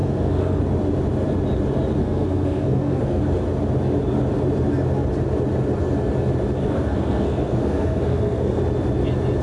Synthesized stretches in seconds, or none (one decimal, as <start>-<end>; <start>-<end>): 0.0-0.6; 2.0-3.2; 6.6-8.6